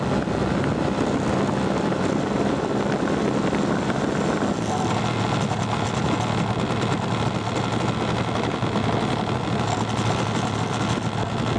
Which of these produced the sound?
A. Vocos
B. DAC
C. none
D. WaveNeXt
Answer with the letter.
C